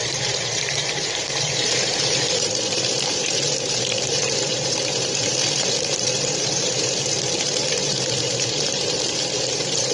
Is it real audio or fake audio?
fake